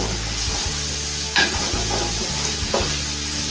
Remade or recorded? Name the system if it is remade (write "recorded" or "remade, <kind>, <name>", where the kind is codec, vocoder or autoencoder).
recorded